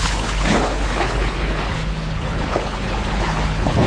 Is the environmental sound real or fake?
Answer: fake